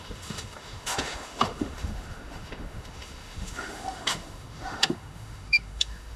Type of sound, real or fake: fake